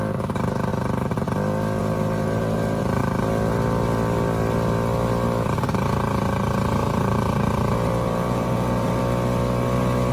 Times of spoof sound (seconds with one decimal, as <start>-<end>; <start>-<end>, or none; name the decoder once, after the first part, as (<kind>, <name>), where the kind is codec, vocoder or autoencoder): 0.7-1.2 (vocoder, BigVGAN v2); 1.8-3.0; 6.8-9.0